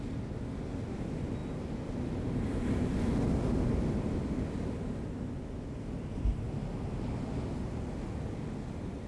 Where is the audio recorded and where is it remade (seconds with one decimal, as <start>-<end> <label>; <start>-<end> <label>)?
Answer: 0.0-9.1 recorded